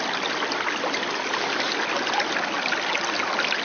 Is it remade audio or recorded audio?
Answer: recorded